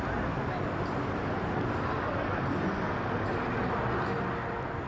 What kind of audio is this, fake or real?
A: real